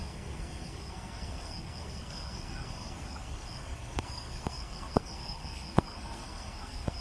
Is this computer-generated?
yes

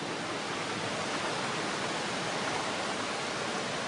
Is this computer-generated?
no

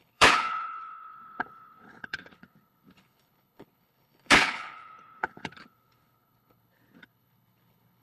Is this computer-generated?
yes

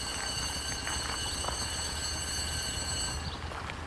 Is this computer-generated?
no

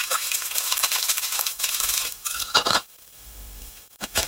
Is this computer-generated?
yes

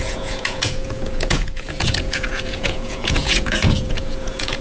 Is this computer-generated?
yes